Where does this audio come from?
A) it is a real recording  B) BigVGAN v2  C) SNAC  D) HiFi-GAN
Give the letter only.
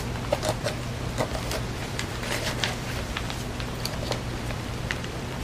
B